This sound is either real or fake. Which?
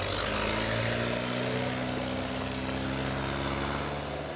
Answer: real